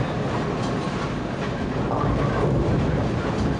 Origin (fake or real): real